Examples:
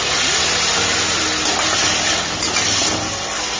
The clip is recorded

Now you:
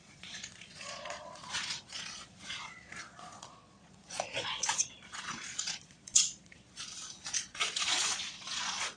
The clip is remade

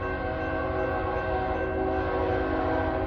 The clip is recorded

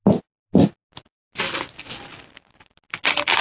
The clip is recorded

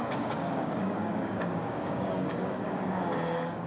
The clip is remade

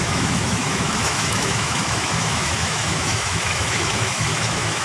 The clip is remade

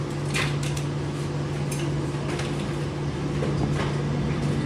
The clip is recorded